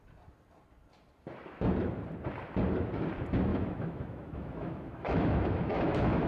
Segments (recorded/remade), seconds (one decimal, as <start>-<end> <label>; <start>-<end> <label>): 0.0-3.5 recorded; 3.5-6.3 remade